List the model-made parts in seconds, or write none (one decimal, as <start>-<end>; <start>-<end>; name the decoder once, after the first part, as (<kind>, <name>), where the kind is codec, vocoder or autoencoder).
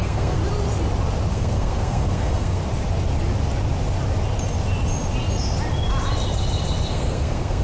0.0-0.4 (codec, SNAC); 1.3-2.6; 6.9-7.6